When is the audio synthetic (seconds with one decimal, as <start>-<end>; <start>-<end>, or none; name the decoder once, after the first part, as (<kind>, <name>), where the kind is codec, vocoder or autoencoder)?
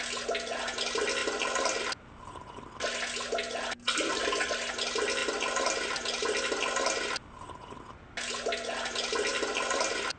1.2-1.8 (vocoder, BigVGAN v2); 5.2-6.6; 9.3-10.2